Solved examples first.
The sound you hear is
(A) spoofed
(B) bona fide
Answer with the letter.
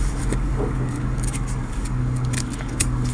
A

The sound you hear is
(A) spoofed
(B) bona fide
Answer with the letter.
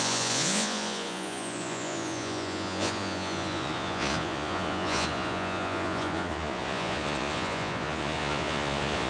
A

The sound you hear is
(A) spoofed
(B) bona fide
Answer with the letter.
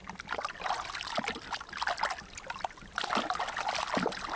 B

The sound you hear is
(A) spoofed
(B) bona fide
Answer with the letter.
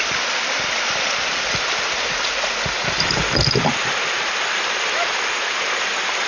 B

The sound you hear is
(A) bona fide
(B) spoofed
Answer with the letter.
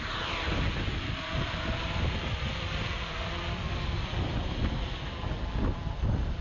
A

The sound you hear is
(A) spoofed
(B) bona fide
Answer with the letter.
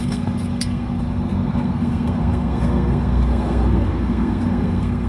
A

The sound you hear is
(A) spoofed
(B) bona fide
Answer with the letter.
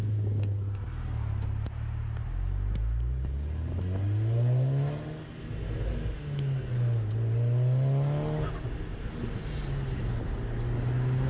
B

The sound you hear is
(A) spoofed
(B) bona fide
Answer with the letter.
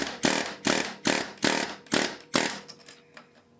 B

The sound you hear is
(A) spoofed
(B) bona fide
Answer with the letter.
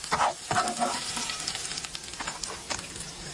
B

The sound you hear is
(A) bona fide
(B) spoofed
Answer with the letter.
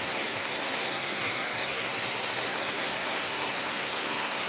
B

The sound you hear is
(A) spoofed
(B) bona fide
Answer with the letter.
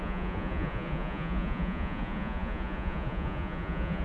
A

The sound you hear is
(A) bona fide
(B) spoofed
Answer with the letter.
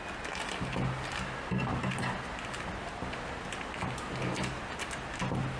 A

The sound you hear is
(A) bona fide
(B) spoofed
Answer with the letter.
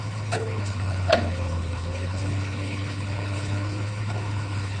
B